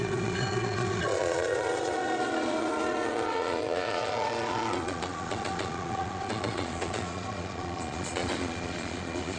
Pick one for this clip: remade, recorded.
remade